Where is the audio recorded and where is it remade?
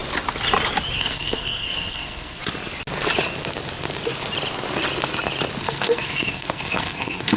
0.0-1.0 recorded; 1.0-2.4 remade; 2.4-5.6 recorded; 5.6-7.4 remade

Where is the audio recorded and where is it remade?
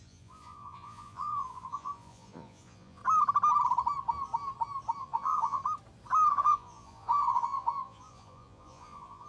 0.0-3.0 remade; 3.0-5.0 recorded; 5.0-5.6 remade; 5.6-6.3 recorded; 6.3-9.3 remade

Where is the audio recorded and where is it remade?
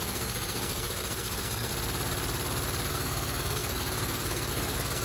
0.0-1.7 remade; 1.7-2.9 recorded; 2.9-5.0 remade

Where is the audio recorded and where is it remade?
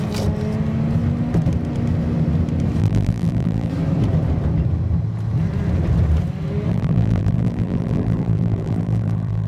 0.0-2.8 recorded; 2.8-3.7 remade; 3.7-6.7 recorded; 6.7-9.5 remade